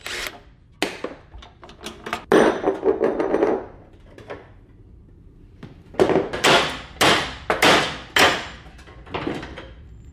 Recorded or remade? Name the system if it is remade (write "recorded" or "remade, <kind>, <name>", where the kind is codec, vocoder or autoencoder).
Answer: recorded